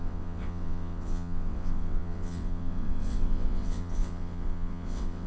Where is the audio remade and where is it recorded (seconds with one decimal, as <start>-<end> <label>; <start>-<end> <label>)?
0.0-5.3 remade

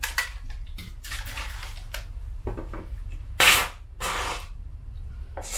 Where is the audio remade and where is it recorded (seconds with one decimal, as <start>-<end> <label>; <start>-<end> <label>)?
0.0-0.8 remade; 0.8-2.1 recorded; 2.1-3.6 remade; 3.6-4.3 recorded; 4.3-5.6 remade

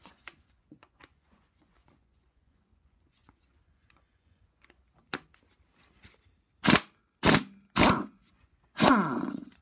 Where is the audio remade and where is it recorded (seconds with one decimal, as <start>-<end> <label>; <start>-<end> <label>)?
0.0-4.8 remade; 4.8-7.9 recorded; 7.9-9.6 remade

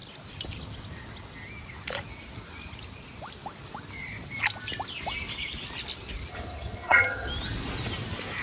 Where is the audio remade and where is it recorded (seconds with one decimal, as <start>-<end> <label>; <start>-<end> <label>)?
0.0-6.3 recorded; 6.3-7.3 remade; 7.3-8.4 recorded

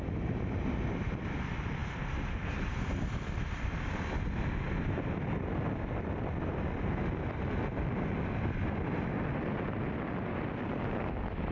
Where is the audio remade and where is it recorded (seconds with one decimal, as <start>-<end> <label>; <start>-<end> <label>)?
0.0-11.5 recorded

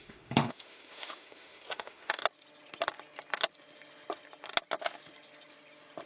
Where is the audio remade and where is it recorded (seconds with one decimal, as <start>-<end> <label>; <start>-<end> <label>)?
0.0-2.2 remade; 2.2-6.1 recorded

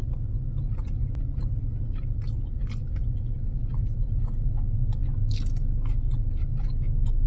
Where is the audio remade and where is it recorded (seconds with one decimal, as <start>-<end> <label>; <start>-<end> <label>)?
0.0-7.3 recorded

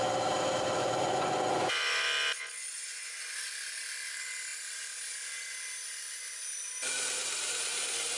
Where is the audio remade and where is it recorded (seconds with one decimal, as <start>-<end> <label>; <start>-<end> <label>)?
0.0-0.8 recorded; 0.8-1.7 remade; 1.7-2.7 recorded; 2.7-3.2 remade; 3.2-8.2 recorded